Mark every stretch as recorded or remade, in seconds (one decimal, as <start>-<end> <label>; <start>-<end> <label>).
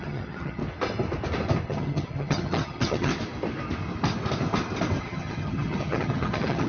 0.0-0.6 remade; 0.6-1.7 recorded; 1.7-3.1 remade; 3.1-5.0 recorded; 5.0-6.7 remade